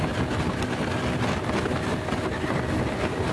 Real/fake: real